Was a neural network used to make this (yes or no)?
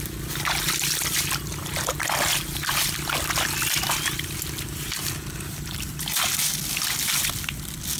no